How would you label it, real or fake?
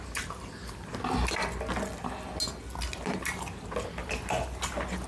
real